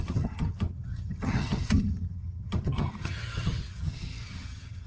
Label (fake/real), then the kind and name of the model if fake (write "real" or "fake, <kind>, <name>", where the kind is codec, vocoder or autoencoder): fake, vocoder, HiFi-GAN